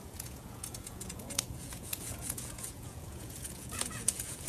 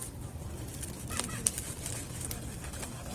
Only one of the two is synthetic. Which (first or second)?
first